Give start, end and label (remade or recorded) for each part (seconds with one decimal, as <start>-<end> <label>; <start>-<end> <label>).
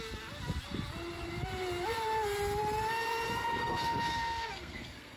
0.0-3.6 recorded; 3.6-5.2 remade